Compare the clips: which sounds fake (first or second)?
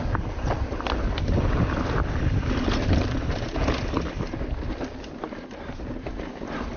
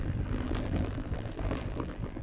second